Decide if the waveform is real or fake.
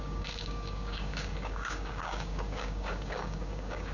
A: fake